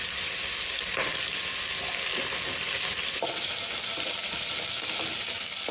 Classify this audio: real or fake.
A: real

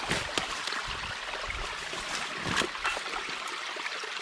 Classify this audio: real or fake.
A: real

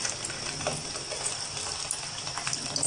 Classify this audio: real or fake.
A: real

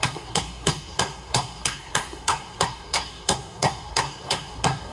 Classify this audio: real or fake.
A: fake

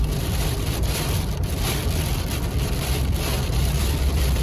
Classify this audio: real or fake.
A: fake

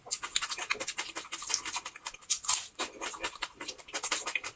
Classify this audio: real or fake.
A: real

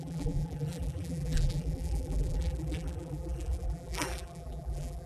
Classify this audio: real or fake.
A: fake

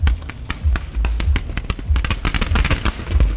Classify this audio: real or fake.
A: real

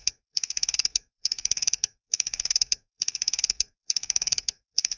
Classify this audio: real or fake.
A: fake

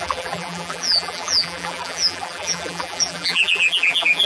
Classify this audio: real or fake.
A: fake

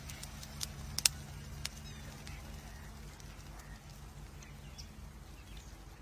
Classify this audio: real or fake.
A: real